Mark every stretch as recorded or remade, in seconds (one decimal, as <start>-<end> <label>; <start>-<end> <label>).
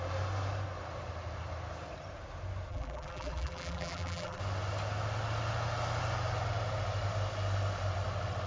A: 0.0-2.7 recorded; 2.7-4.4 remade; 4.4-8.5 recorded